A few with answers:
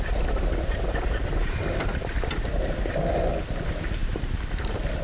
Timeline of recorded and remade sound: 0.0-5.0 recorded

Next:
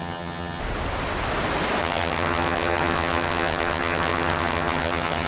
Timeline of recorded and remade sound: 0.0-0.6 remade; 0.6-1.8 recorded; 1.8-5.3 remade